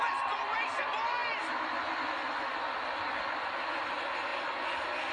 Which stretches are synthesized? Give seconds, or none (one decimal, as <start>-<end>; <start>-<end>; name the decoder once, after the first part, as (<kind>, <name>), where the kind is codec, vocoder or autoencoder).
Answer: none